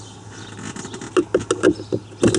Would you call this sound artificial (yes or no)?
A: no